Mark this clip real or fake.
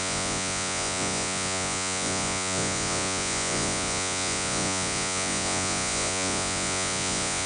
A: fake